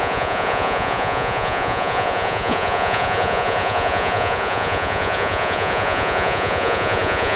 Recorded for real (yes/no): no